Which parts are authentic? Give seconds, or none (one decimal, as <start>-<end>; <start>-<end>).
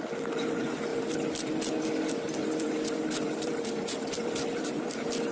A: 0.0-0.9; 1.7-2.4